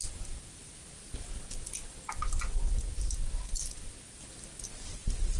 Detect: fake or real real